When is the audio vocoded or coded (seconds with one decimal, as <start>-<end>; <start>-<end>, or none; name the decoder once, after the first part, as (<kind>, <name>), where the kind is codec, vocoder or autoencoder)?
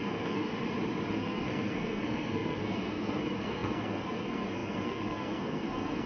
0.0-0.5 (codec, SNAC); 1.1-6.1